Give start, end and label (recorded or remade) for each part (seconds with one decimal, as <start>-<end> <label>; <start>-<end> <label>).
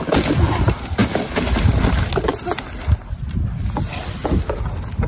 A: 0.0-5.1 recorded